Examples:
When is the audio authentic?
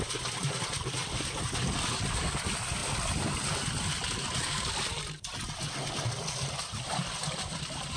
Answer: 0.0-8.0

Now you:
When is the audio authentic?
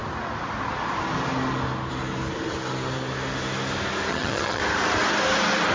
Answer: 0.0-4.1; 4.6-5.7